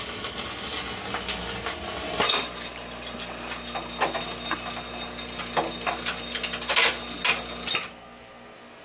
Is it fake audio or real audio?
real